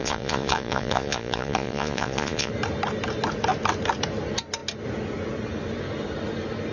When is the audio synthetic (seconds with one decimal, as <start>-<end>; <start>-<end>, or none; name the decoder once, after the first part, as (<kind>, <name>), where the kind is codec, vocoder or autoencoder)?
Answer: 0.0-2.5 (vocoder, Vocos)